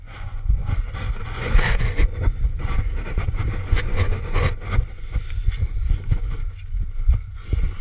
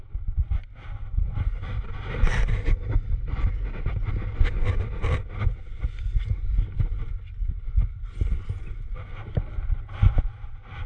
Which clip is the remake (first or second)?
first